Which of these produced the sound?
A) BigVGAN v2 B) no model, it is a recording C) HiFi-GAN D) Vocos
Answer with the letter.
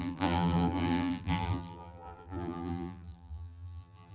A